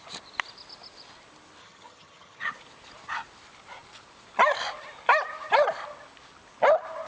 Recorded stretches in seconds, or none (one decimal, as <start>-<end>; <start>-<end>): 0.0-1.6; 2.5-7.1